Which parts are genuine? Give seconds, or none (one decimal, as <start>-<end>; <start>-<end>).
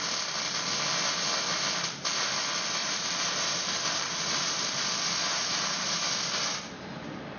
0.0-2.8; 6.0-7.4